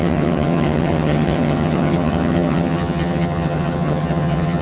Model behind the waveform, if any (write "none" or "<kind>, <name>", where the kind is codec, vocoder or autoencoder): vocoder, HiFi-GAN